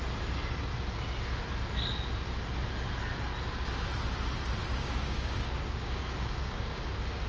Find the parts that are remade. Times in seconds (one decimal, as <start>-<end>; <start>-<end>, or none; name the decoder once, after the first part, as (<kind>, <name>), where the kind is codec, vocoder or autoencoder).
4.6-6.8 (codec, DAC)